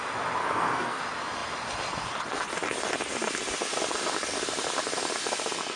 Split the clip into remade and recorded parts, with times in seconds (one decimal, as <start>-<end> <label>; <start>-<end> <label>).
0.0-0.4 recorded; 0.4-1.0 remade; 1.0-5.8 recorded